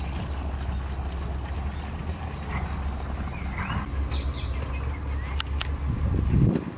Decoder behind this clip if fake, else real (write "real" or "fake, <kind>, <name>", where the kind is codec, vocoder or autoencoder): real